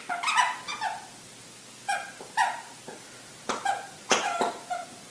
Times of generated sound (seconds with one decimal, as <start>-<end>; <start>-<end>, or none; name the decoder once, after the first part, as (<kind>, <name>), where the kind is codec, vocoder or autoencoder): none